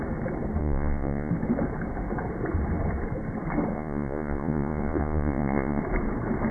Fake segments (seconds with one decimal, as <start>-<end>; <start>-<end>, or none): 0.6-1.3; 3.7-5.8